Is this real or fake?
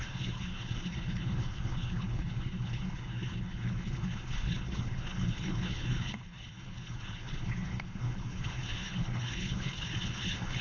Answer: fake